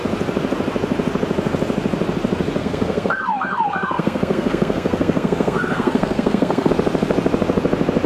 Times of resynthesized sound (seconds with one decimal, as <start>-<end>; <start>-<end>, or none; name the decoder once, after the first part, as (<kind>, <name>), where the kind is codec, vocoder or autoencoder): 2.6-6.7 (codec, SNAC)